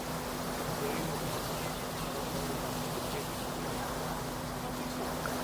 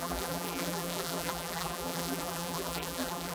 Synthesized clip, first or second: second